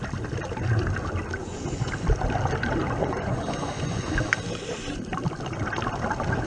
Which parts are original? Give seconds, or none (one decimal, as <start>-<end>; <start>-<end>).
0.0-1.4; 1.9-3.0; 4.1-6.5